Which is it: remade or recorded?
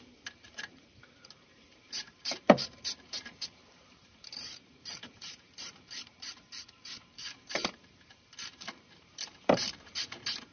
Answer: remade